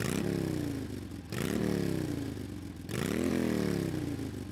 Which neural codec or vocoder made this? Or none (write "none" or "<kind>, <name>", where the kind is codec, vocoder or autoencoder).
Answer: none